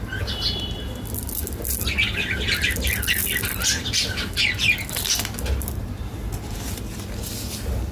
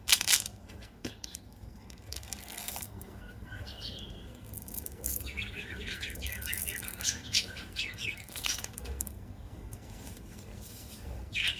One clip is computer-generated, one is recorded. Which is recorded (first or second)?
first